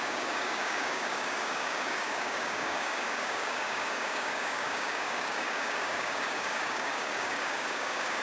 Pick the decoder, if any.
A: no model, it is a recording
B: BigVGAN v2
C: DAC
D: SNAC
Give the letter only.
C